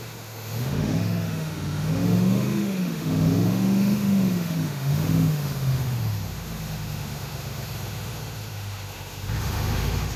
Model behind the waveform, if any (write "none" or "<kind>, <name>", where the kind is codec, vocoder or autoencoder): autoencoder, DAC-VAE